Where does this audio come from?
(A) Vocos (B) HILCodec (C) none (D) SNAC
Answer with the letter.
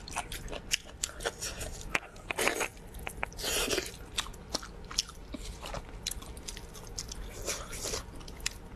C